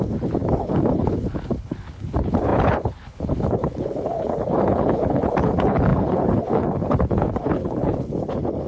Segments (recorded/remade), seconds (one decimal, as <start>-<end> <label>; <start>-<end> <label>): 0.0-8.7 remade